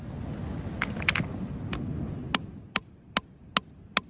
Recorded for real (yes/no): yes